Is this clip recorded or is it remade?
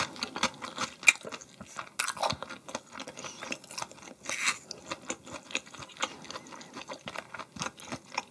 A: recorded